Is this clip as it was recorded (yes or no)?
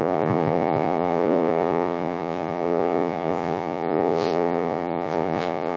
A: no